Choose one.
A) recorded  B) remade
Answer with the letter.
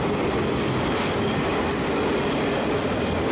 A